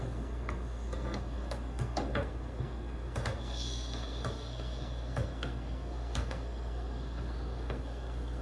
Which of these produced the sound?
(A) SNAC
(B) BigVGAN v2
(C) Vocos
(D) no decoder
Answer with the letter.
A